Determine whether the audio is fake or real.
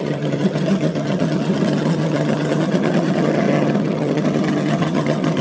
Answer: fake